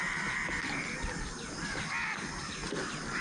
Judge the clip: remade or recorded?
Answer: recorded